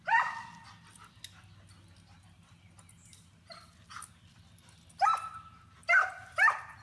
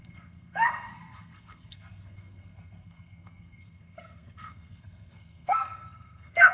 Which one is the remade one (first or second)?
second